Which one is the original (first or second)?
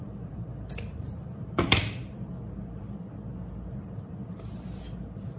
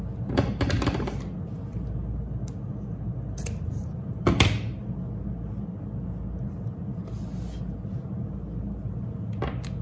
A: second